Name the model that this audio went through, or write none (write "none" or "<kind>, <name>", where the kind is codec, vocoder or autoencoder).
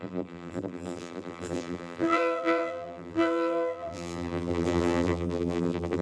vocoder, BigVGAN v2